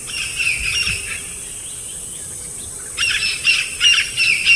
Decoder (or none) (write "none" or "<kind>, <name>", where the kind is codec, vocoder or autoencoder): vocoder, BigVGAN v2